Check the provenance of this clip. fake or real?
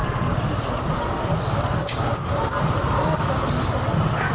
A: real